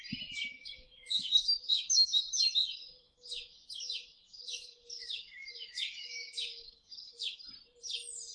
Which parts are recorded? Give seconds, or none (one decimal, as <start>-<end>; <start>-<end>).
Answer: 0.0-0.6; 2.2-2.8; 7.4-8.3